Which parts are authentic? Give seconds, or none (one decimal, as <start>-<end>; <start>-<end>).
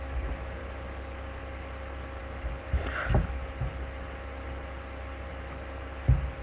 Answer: 0.0-6.4